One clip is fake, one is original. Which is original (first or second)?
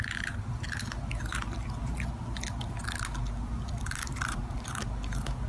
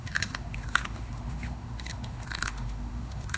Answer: first